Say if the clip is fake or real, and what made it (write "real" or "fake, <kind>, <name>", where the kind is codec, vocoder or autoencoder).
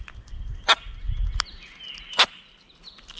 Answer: real